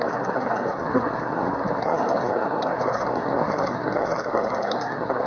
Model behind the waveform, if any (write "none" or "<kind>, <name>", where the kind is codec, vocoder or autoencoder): codec, SNAC